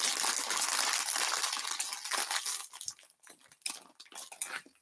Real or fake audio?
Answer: real